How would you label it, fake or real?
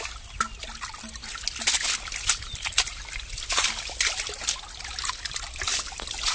real